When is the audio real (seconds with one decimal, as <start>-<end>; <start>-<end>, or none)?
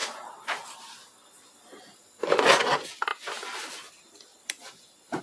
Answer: 0.0-5.2